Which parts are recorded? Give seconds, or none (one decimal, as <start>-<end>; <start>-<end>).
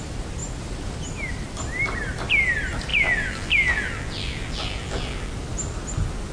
0.0-2.9; 5.3-6.3